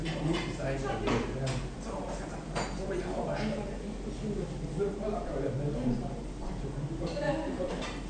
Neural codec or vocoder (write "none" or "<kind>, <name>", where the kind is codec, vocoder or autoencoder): none